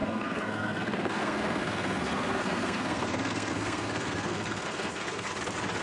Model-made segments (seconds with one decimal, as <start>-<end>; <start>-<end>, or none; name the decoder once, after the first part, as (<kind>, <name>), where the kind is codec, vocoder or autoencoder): 0.0-5.3 (codec, SNAC)